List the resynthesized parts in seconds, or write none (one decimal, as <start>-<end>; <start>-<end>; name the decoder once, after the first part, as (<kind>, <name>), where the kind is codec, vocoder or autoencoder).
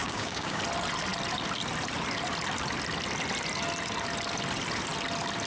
0.0-0.6 (codec, DAC)